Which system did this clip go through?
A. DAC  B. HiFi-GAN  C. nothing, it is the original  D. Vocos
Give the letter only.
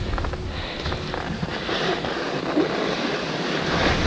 C